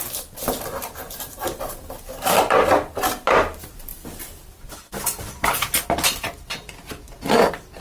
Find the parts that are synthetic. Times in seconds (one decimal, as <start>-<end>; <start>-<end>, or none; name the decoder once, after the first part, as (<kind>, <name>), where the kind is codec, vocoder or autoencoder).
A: none